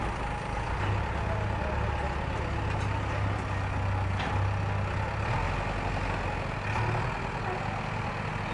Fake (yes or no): no